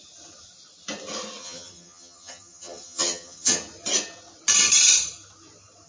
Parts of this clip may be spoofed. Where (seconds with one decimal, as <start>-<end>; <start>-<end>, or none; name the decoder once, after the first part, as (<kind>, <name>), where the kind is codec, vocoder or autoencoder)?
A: 1.4-3.6 (vocoder, HiFi-GAN)